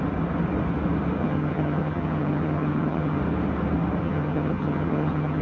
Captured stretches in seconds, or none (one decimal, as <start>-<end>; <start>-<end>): 0.0-1.2; 3.2-4.0